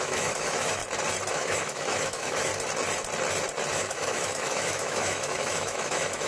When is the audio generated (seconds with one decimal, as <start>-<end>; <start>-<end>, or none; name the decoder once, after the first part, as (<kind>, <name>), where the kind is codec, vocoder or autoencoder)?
0.0-0.8 (autoencoder, DAC-VAE); 1.3-2.5; 3.7-6.3

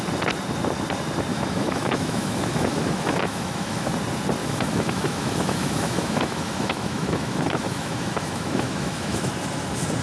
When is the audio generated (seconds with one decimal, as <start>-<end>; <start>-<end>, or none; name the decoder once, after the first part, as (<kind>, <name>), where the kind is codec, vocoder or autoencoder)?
1.3-3.9 (autoencoder, DAC-VAE); 4.4-9.3

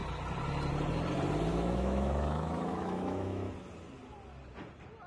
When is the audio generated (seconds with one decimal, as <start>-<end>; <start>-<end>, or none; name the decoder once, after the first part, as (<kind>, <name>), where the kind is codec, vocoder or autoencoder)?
1.5-3.5 (autoencoder, DAC-VAE)

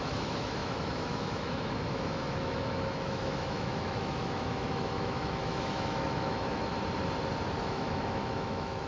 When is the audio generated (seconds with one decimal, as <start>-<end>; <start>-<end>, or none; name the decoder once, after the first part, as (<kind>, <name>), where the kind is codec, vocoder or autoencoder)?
0.0-6.7 (autoencoder, DAC-VAE); 7.6-8.9

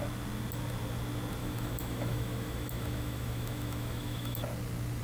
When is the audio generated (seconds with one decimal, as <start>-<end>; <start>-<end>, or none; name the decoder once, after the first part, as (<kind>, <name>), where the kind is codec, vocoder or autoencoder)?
1.4-4.4 (autoencoder, DAC-VAE)